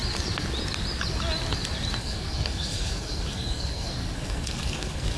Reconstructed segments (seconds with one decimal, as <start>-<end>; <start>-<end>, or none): 2.0-5.2